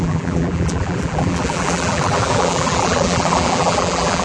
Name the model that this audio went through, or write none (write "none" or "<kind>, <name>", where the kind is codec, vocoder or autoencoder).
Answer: vocoder, BigVGAN v2